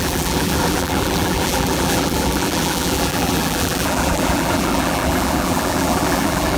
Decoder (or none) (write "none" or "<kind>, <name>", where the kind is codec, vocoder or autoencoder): vocoder, BigVGAN v2